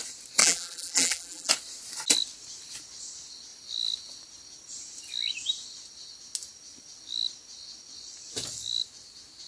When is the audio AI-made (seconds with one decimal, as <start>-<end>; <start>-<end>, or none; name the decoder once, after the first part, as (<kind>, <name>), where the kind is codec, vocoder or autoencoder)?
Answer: 0.4-1.5 (vocoder, BigVGAN v2)